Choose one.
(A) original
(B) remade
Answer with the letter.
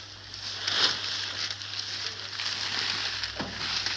A